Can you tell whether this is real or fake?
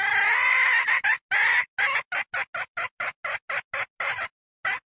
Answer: real